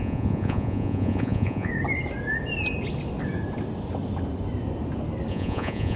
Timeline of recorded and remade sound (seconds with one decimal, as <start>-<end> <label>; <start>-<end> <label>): 0.0-1.7 remade; 1.7-5.3 recorded; 5.3-6.0 remade